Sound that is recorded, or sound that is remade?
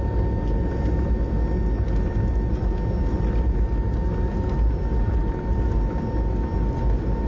recorded